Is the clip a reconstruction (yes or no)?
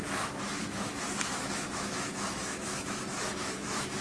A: yes